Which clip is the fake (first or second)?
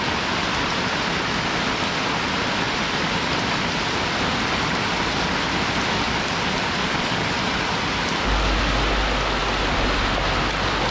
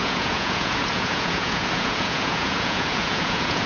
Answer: second